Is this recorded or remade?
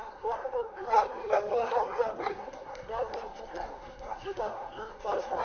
remade